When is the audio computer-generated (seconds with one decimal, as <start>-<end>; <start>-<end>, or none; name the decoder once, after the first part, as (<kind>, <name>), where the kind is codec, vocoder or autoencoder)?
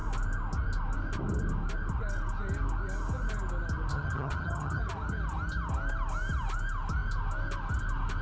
3.9-4.8 (vocoder, HiFi-GAN)